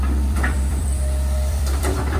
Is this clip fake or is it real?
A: fake